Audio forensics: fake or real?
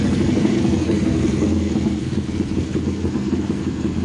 fake